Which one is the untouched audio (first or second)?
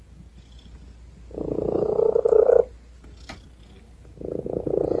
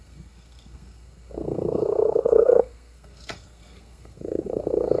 first